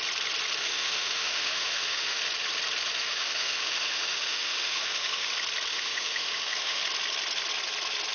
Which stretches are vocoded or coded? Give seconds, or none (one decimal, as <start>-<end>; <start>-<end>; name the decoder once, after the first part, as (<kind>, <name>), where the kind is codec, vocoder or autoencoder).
0.6-2.2 (autoencoder, DAC-VAE); 3.0-5.3; 5.7-6.8